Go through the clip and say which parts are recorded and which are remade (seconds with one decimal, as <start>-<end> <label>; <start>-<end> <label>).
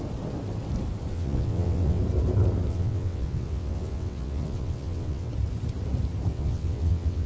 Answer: 0.0-1.1 recorded; 1.1-2.0 remade; 2.0-2.7 recorded; 2.7-5.3 remade; 5.3-6.3 recorded; 6.3-7.3 remade